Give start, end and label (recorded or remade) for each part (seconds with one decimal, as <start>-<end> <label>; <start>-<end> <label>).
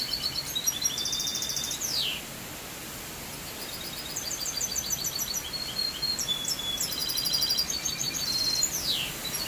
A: 0.0-9.5 recorded